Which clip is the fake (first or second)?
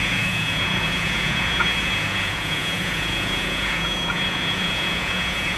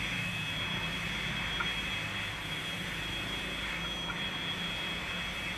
first